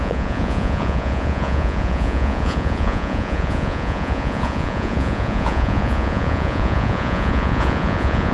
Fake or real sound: fake